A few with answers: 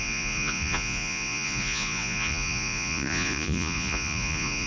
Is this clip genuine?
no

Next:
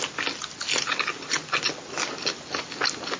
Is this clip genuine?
yes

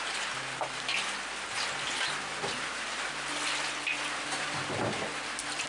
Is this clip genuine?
yes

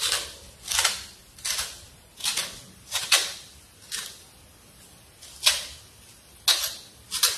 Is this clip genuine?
yes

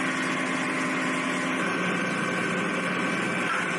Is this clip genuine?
yes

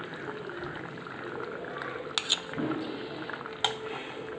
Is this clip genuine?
yes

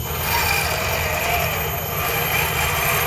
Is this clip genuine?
yes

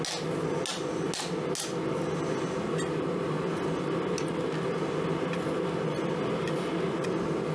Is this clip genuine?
yes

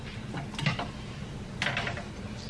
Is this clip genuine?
yes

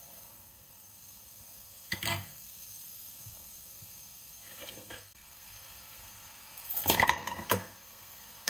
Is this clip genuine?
no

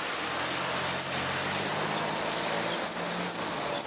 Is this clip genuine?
yes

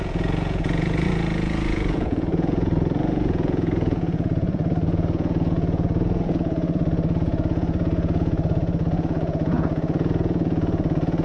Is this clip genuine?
no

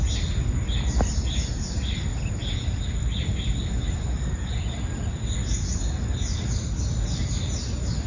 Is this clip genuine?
yes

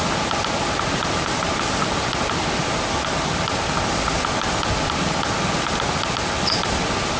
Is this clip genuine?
yes